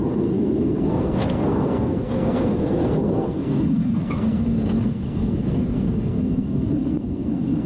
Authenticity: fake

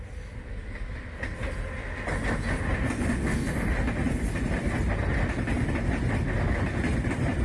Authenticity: real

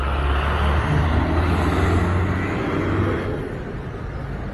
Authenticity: real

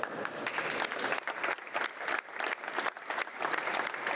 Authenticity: real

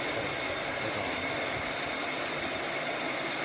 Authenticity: real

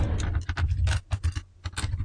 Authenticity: real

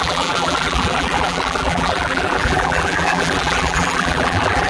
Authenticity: fake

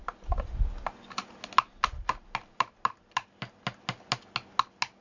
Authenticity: real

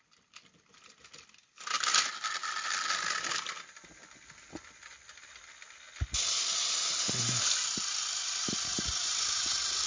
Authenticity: real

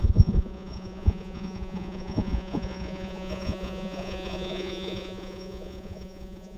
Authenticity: fake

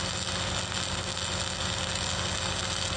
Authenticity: real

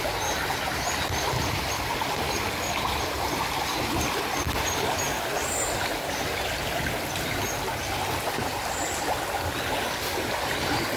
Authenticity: real